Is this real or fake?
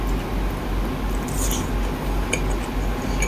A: real